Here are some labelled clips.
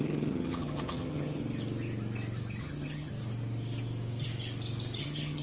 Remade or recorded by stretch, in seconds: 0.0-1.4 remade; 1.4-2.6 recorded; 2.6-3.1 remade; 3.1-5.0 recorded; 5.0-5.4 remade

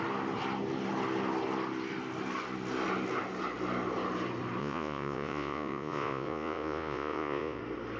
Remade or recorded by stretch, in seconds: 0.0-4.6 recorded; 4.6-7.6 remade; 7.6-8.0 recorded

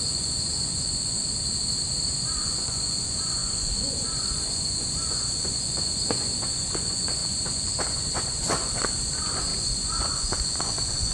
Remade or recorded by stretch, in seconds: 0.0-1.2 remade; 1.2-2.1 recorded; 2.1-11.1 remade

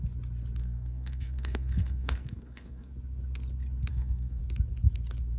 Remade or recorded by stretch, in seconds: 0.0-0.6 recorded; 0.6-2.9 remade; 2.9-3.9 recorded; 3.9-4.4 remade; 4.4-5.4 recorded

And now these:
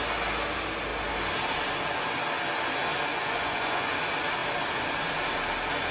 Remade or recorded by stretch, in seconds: 0.0-3.1 recorded; 3.1-3.9 remade; 3.9-5.9 recorded

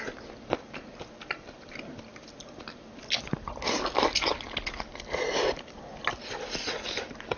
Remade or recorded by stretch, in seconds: 0.0-7.4 recorded

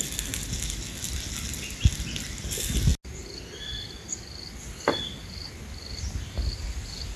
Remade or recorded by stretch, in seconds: 0.0-7.2 recorded